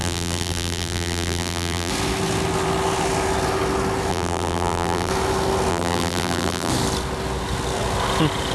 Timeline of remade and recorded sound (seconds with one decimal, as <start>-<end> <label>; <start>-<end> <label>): 0.0-1.9 remade; 1.9-4.1 recorded; 4.1-5.1 remade; 5.1-5.7 recorded; 5.7-6.7 remade; 6.7-8.5 recorded